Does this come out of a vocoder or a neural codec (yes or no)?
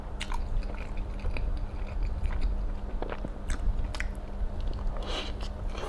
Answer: no